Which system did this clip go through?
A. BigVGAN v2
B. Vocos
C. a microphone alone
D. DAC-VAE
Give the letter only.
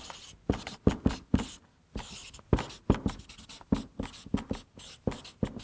C